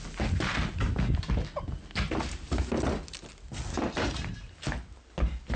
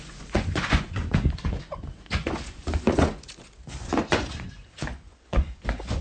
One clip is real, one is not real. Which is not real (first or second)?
second